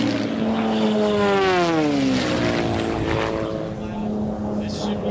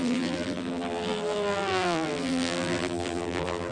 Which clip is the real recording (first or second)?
first